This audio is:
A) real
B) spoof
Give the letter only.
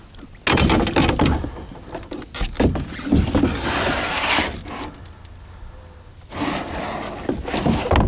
A